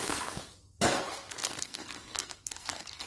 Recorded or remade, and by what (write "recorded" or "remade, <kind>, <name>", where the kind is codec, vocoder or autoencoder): remade, codec, SNAC